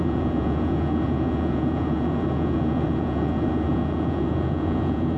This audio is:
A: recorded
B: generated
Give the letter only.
B